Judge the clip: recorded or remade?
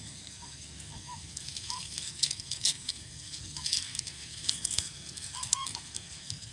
remade